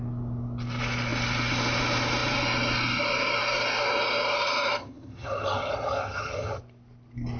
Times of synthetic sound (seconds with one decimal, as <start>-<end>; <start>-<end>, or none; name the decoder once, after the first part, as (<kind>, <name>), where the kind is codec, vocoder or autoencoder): 4.8-6.6 (vocoder, HiFi-GAN)